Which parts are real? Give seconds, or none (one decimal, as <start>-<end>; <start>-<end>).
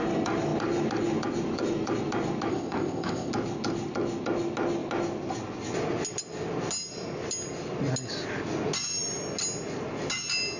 0.0-2.5; 3.3-10.6